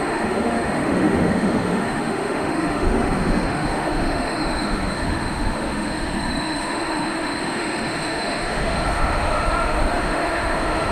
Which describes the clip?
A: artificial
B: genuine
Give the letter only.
A